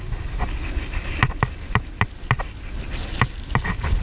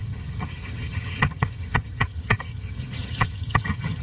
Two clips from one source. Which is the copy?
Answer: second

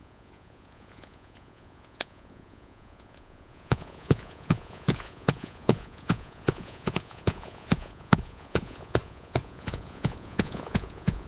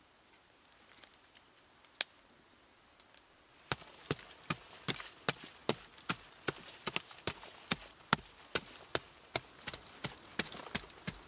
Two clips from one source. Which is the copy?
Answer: first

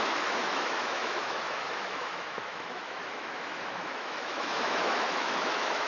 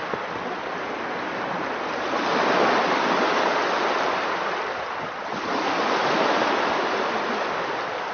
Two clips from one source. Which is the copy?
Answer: first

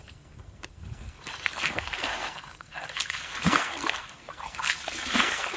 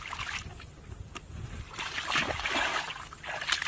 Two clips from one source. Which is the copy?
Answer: first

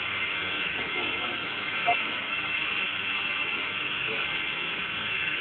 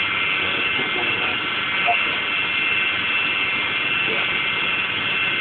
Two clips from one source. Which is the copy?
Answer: first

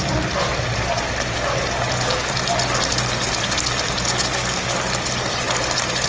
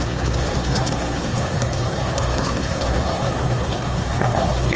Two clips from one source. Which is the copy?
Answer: second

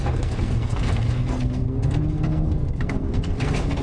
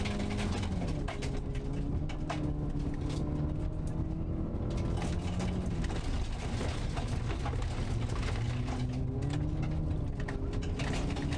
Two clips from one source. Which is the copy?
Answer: first